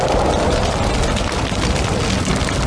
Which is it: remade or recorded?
recorded